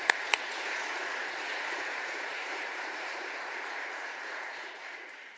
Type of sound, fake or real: fake